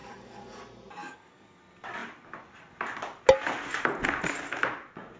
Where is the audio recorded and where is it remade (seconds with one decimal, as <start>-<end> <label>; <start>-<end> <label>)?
0.0-0.6 remade; 0.6-1.0 recorded; 1.0-1.6 remade; 1.6-5.2 recorded